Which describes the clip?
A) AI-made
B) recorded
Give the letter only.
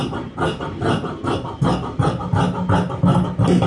B